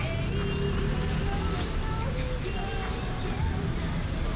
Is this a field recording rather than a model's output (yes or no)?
yes